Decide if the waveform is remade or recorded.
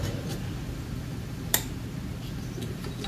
recorded